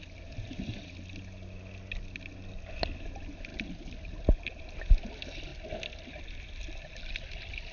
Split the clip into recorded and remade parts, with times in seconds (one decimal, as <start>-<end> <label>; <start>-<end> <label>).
0.0-7.7 recorded